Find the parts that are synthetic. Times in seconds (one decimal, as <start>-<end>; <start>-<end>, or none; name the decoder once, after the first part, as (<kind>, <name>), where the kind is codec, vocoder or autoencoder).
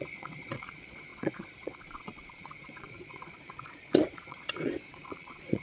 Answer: 0.0-5.6 (vocoder, Vocos)